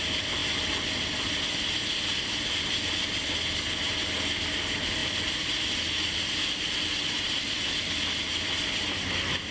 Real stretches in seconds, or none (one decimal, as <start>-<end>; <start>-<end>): 0.0-9.5